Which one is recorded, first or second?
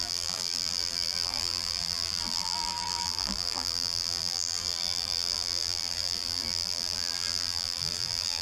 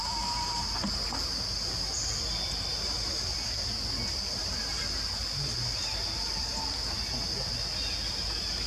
second